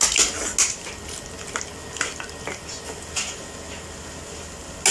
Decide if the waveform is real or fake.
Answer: real